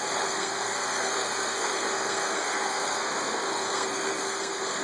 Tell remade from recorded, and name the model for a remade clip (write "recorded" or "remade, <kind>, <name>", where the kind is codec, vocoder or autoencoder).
remade, codec, SNAC